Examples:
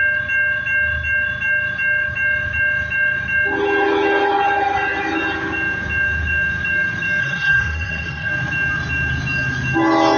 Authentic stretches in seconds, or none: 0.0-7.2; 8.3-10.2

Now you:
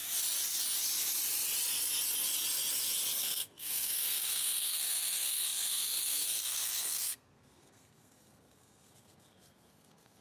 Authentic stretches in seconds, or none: 0.0-3.2

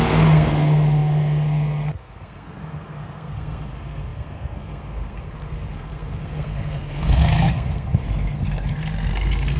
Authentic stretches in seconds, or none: none

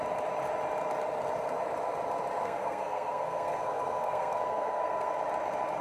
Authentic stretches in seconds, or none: 0.0-2.4; 5.1-5.8

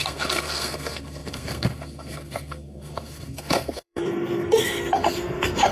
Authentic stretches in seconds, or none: none

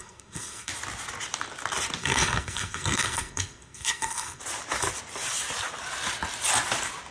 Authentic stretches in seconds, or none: 0.7-2.0; 4.4-7.1